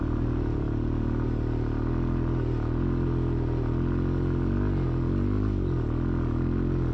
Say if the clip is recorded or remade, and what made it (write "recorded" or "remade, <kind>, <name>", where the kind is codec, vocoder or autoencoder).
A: recorded